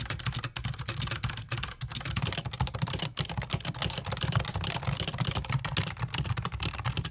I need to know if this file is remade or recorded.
recorded